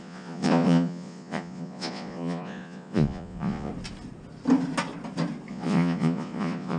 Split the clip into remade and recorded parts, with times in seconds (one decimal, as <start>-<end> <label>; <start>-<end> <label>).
0.0-3.7 remade; 3.7-5.5 recorded; 5.5-6.8 remade